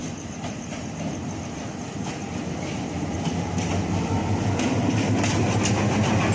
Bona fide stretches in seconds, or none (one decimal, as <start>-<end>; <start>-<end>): 0.0-6.3